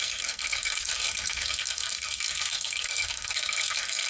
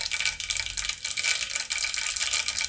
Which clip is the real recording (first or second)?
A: second